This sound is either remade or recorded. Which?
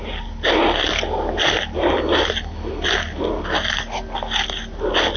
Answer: recorded